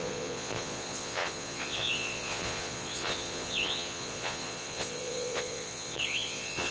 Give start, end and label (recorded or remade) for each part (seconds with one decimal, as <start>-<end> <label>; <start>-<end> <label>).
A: 0.0-6.7 remade